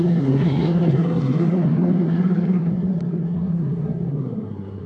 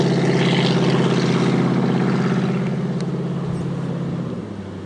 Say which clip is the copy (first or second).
first